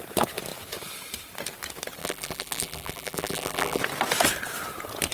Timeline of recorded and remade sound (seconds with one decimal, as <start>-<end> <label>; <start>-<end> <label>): 0.0-2.0 recorded; 2.0-3.8 remade; 3.8-5.1 recorded